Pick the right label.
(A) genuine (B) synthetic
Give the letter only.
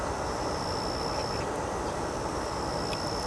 A